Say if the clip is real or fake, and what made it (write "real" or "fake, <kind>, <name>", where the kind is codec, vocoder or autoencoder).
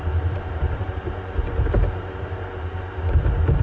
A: fake, vocoder, BigVGAN v2